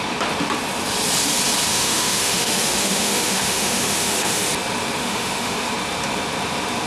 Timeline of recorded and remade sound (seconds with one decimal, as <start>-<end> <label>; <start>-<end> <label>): 0.0-1.7 recorded; 1.7-4.5 remade; 4.5-5.0 recorded; 5.0-5.7 remade; 5.7-6.9 recorded